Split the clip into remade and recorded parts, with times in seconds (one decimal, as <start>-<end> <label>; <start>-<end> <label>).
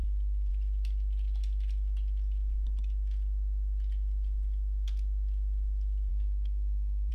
0.0-6.1 recorded; 6.1-7.1 remade